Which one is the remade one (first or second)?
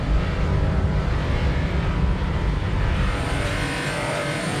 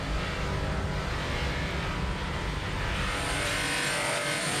first